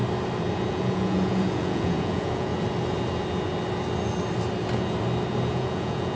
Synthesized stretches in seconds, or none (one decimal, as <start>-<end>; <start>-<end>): 0.7-2.5; 5.5-6.2